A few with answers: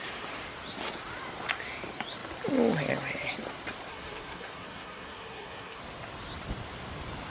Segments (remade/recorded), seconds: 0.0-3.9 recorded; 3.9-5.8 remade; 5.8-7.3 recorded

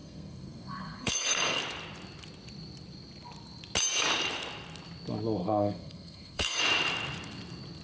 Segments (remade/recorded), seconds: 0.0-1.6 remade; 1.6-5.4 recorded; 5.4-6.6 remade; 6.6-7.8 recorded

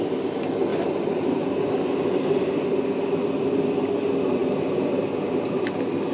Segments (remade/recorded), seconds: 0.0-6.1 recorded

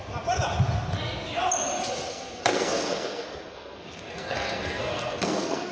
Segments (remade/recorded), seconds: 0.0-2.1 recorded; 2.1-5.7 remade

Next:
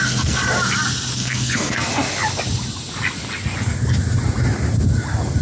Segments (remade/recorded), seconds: 0.0-0.4 remade; 0.4-1.1 recorded; 1.1-1.9 remade; 1.9-5.4 recorded